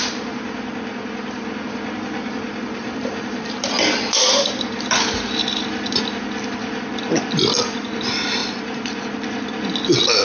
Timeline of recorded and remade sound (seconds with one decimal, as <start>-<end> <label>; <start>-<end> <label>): 0.0-2.8 recorded; 2.8-3.6 remade; 3.6-8.4 recorded; 8.4-9.0 remade; 9.0-10.2 recorded